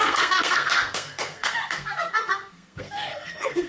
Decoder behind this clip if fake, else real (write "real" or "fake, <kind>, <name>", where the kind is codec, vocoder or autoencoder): fake, codec, SNAC